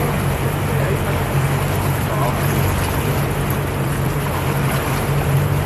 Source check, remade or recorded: remade